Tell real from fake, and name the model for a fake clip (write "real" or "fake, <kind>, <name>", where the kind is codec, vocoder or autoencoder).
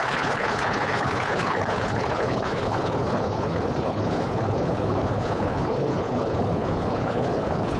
fake, codec, HILCodec